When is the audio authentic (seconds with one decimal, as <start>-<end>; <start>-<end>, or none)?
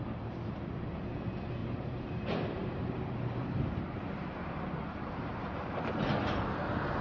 0.0-1.6; 5.8-7.0